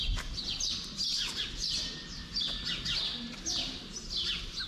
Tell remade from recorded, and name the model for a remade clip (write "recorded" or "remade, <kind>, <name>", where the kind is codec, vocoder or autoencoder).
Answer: recorded